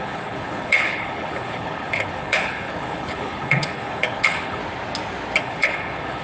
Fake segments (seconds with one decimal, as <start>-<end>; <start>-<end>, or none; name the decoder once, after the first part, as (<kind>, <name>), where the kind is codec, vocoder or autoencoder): 0.0-4.6 (codec, HILCodec); 5.4-6.2

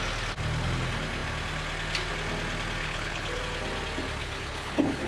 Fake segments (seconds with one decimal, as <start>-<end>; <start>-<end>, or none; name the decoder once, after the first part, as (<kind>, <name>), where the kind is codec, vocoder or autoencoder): 2.8-3.4 (codec, HILCodec); 4.2-5.1

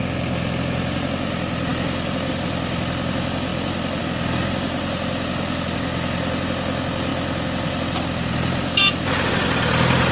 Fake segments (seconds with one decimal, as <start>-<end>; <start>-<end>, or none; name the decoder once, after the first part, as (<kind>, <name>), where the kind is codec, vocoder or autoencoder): none

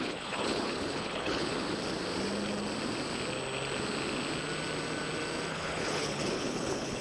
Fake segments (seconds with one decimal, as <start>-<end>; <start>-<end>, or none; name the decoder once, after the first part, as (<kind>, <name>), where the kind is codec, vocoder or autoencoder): 0.0-1.5 (codec, HILCodec); 5.5-7.0

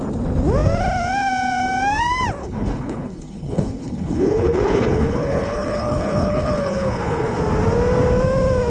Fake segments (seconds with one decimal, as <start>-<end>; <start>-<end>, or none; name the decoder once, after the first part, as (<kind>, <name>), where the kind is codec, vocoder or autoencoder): 2.4-7.4 (codec, HILCodec)

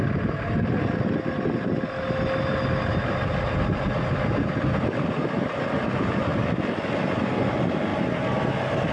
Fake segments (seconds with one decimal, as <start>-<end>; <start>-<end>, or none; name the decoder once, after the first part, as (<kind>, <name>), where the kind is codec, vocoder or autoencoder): none